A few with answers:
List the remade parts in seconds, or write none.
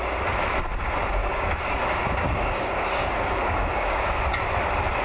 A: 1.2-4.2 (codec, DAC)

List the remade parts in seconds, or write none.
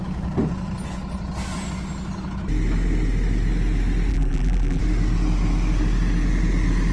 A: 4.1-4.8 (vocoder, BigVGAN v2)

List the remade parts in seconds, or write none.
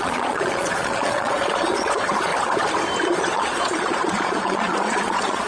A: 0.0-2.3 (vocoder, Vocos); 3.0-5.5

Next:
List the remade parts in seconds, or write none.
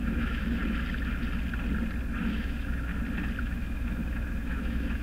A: 0.0-0.6 (autoencoder, DAC-VAE); 2.2-2.9; 3.4-5.0